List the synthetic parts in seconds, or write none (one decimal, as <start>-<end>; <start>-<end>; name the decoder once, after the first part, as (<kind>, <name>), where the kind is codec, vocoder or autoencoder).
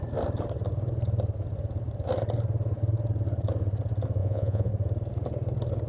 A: 4.2-4.7 (vocoder, Vocos)